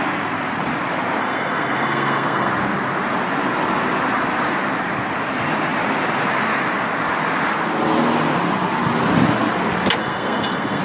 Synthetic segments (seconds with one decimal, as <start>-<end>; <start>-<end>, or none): 1.2-2.5; 10.0-10.8